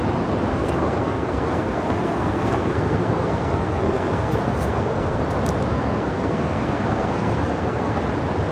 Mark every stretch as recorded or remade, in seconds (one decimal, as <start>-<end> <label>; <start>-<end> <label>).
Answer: 0.0-0.5 recorded; 0.5-5.2 remade; 5.2-5.7 recorded; 5.7-8.0 remade; 8.0-8.5 recorded